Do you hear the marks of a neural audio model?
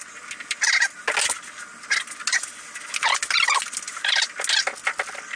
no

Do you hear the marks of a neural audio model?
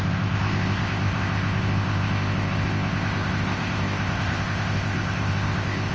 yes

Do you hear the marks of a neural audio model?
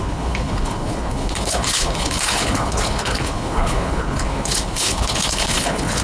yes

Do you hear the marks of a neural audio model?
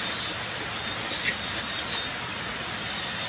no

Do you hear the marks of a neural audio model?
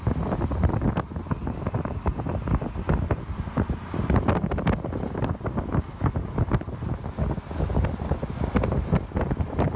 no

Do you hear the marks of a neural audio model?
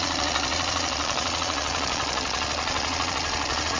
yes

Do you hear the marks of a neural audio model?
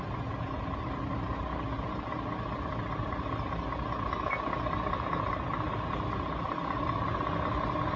no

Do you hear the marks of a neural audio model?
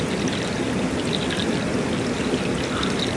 no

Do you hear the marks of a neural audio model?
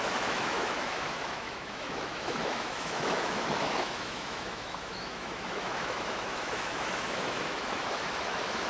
yes